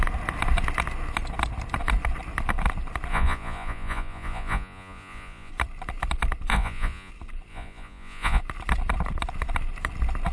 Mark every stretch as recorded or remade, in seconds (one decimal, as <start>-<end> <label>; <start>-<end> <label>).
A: 0.0-3.1 recorded; 3.1-5.5 remade; 5.5-6.5 recorded; 6.5-7.1 remade; 7.1-7.5 recorded; 7.5-8.4 remade; 8.4-10.3 recorded